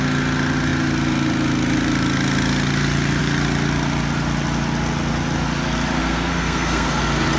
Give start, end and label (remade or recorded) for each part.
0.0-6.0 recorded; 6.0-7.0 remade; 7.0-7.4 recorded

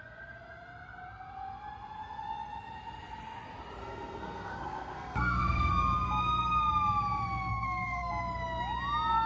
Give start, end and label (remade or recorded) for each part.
0.0-3.8 recorded; 3.8-5.7 remade; 5.7-7.5 recorded; 7.5-8.1 remade; 8.1-9.3 recorded

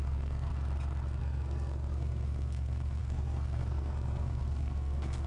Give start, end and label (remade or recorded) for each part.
0.0-0.5 remade; 0.5-1.2 recorded; 1.2-5.3 remade

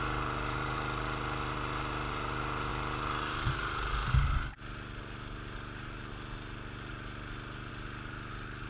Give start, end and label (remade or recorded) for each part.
0.0-8.7 recorded

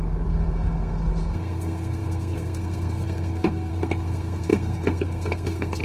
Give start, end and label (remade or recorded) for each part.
0.0-5.8 remade